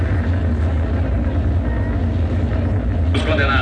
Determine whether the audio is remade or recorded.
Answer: recorded